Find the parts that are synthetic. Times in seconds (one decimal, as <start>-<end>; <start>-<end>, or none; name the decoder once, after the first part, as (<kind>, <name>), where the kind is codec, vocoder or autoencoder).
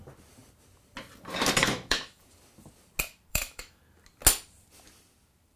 1.6-2.2 (autoencoder, DAC-VAE); 3.3-3.8